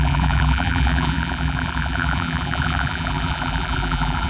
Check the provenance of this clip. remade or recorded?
remade